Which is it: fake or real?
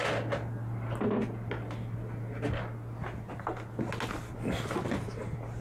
real